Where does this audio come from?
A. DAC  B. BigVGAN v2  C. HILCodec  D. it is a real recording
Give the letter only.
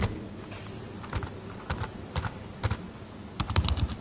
D